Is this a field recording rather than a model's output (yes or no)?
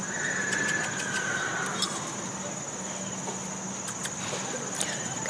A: yes